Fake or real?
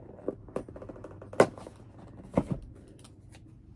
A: real